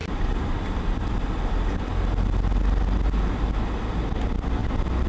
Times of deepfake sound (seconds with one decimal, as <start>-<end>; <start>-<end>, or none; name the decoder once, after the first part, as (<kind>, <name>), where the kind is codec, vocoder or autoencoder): 0.0-1.9 (vocoder, BigVGAN v2); 3.3-4.6